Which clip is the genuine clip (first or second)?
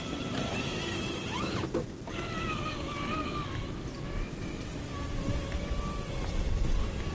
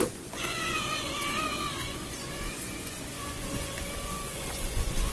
first